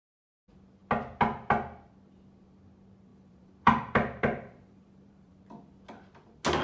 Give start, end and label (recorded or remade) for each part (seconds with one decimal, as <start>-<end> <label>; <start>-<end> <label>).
0.0-3.1 recorded; 3.1-5.4 remade; 5.4-6.6 recorded